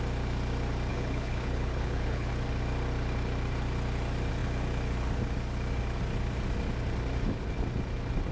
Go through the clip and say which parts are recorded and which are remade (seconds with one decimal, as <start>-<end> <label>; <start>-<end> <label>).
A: 0.0-0.9 recorded; 0.9-2.3 remade; 2.3-8.3 recorded